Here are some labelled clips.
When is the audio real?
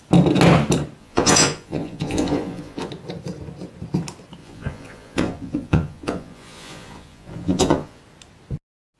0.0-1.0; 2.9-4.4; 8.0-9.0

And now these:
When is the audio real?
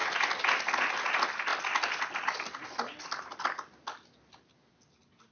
0.0-5.3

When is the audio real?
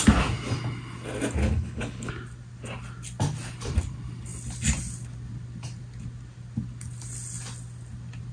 0.0-1.4; 2.1-8.3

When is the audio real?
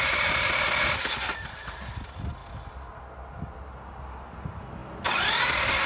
0.0-5.9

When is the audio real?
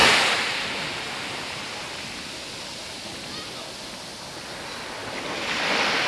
0.0-6.1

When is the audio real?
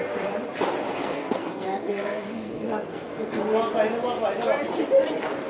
0.0-0.9; 3.4-5.5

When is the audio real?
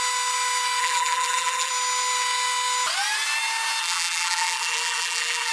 0.0-0.8; 1.7-3.8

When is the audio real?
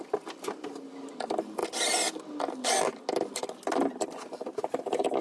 0.0-5.2